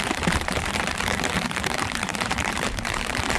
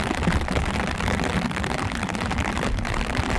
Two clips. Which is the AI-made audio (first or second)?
first